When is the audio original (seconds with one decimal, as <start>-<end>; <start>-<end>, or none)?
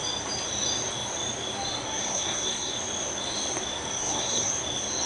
0.0-2.0; 2.7-4.0; 4.5-5.1